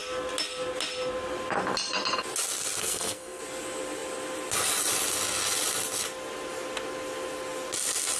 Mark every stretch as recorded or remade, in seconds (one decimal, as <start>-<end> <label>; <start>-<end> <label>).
0.0-2.8 recorded; 2.8-3.4 remade; 3.4-8.2 recorded